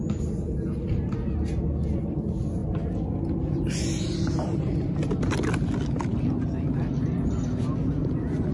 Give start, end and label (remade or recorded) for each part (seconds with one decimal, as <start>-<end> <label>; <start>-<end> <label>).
0.0-8.5 recorded